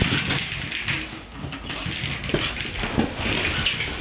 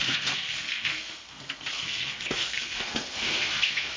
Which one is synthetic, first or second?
second